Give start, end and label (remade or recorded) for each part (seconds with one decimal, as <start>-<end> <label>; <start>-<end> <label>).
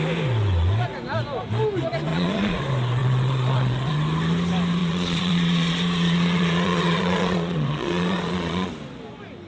0.0-2.1 recorded; 2.1-2.6 remade; 2.6-3.0 recorded; 3.0-3.9 remade; 3.9-4.8 recorded; 4.8-8.7 remade; 8.7-9.5 recorded